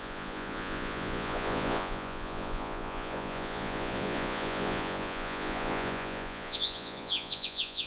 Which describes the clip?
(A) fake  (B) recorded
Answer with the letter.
A